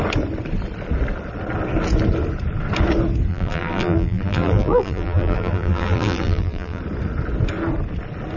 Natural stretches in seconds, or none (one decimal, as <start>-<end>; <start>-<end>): 0.0-3.3; 6.8-8.4